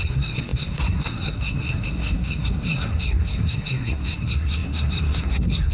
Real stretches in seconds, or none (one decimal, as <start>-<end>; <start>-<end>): none